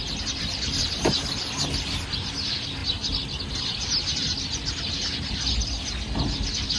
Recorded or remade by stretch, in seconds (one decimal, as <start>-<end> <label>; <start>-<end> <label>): 0.0-6.8 recorded